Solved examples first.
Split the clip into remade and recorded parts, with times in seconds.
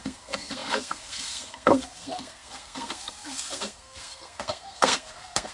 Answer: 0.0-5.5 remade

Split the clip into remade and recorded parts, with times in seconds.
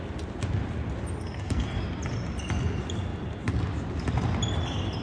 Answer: 0.0-1.2 recorded; 1.2-1.8 remade; 1.8-5.0 recorded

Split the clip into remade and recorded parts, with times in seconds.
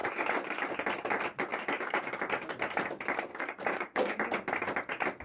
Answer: 0.0-0.7 remade; 0.7-1.5 recorded; 1.5-2.2 remade; 2.2-3.3 recorded; 3.3-4.1 remade; 4.1-5.2 recorded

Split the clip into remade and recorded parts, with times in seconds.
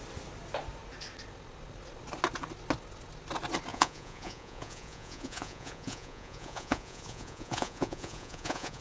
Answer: 0.0-3.7 recorded; 3.7-8.8 remade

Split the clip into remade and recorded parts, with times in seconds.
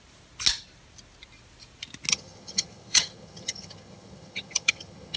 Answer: 0.0-2.1 recorded; 2.1-5.2 remade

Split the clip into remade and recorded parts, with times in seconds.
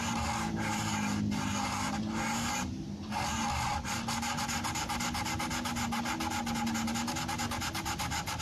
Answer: 0.0-8.4 recorded